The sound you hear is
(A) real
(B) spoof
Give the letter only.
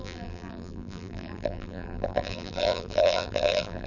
B